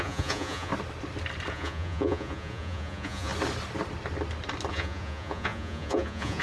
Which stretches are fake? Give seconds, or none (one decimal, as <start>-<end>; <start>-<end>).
0.0-0.7; 1.5-3.3; 4.7-6.4